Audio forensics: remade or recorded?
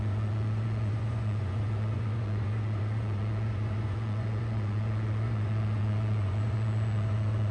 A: remade